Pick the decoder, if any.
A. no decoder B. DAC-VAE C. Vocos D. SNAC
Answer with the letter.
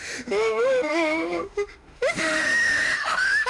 B